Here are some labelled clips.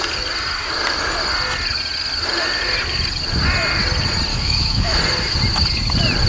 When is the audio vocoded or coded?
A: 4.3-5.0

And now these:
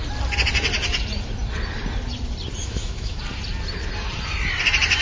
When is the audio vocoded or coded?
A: 2.6-3.2

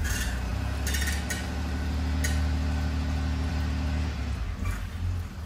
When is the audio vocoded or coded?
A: none

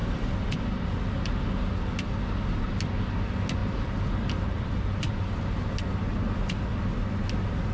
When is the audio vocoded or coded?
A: 0.0-0.6; 3.6-5.4

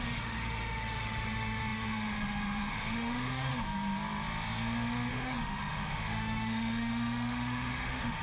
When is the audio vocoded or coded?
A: 0.0-3.5; 5.1-8.2

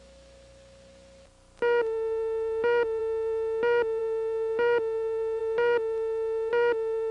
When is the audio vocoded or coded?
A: none